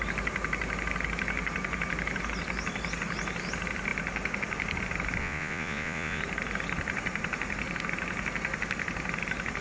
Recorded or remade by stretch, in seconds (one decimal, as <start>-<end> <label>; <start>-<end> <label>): 0.0-5.2 recorded; 5.2-6.2 remade; 6.2-9.6 recorded

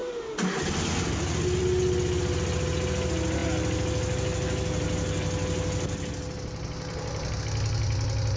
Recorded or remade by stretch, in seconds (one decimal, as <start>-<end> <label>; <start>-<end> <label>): 0.0-8.4 recorded